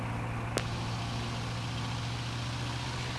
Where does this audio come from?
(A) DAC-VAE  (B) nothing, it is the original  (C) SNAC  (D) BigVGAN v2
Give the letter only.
B